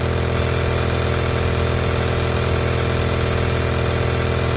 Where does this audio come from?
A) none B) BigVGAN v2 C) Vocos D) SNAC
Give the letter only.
A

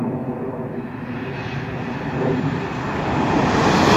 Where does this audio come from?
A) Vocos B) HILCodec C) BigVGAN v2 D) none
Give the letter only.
D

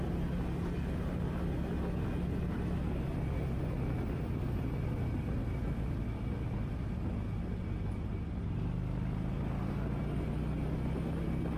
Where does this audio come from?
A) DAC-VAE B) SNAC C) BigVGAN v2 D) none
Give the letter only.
D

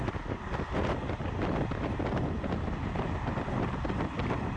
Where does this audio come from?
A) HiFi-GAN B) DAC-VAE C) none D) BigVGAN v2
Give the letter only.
C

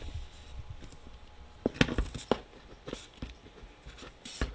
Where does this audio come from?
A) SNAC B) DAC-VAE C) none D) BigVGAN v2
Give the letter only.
C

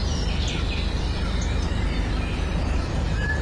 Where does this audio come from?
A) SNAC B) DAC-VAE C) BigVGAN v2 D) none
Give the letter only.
D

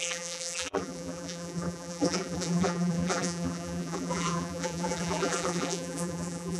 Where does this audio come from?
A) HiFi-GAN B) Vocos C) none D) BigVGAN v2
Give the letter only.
D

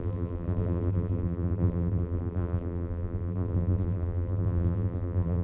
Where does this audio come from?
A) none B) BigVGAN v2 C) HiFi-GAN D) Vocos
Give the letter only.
B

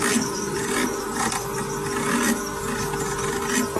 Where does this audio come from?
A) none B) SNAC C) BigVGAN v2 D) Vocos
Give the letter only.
A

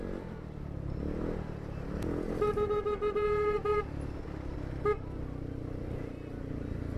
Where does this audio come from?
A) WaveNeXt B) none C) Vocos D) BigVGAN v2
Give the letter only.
B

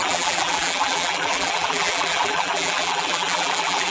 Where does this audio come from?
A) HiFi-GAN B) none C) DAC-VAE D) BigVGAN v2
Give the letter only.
D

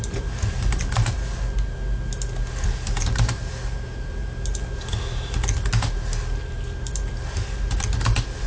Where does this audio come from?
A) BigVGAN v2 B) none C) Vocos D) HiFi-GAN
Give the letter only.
B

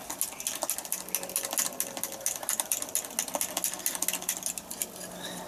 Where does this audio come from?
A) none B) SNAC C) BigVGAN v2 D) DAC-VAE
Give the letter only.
A